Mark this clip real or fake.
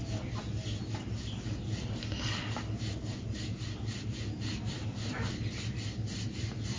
real